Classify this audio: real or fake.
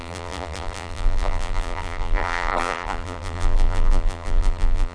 fake